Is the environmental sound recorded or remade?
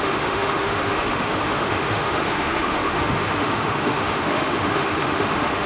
remade